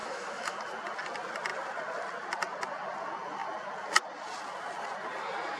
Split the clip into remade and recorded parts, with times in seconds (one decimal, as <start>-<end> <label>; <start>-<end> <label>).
0.0-0.6 remade; 0.6-5.6 recorded